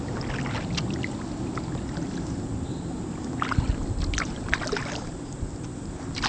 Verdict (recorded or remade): recorded